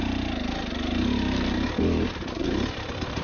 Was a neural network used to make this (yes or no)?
no